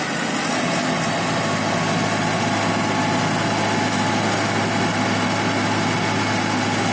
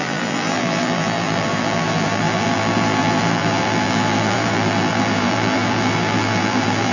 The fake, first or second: second